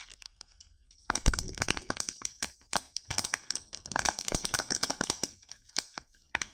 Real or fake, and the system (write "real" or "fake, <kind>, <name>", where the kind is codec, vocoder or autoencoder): fake, codec, SNAC